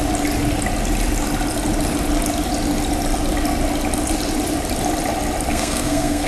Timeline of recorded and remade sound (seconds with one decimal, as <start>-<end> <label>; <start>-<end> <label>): 0.0-5.5 recorded; 5.5-6.3 remade